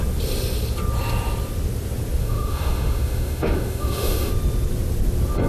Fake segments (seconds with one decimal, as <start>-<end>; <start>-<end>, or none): 2.2-4.3